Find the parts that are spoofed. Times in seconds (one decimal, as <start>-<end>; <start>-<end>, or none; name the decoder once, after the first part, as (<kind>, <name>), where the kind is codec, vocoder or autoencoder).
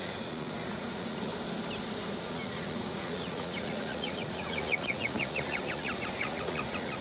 0.0-1.3 (vocoder, Vocos); 2.2-7.0